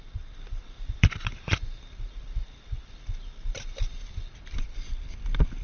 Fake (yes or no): yes